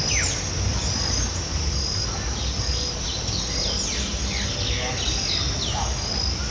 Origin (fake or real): real